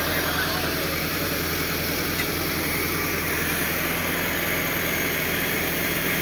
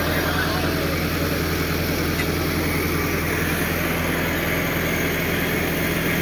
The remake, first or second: first